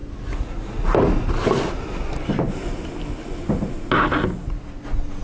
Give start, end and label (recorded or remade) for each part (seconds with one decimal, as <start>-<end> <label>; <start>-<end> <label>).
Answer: 0.0-5.2 recorded